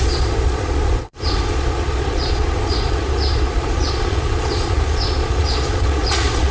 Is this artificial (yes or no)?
yes